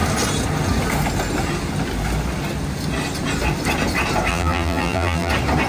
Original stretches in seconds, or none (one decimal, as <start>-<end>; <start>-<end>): 0.0-4.3; 5.3-5.7